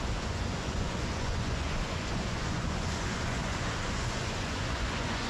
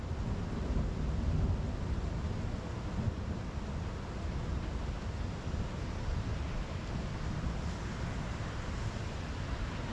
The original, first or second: second